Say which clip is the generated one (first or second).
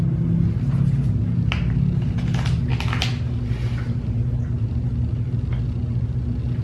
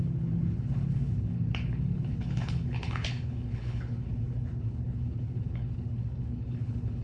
second